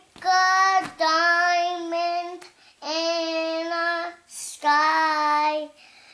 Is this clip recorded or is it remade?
recorded